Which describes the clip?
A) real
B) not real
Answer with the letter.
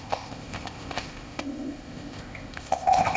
B